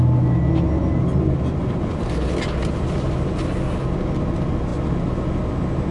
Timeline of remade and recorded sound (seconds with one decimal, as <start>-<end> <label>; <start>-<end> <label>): 0.0-5.9 recorded